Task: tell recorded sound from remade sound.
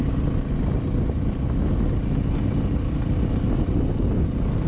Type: recorded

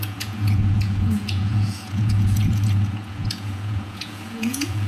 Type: remade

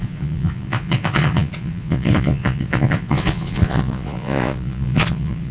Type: remade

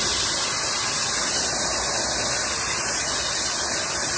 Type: recorded